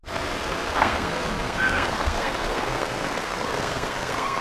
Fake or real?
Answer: fake